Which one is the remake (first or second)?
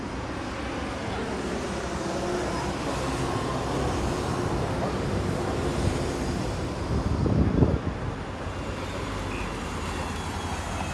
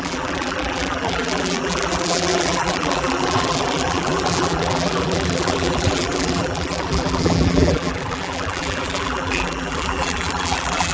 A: second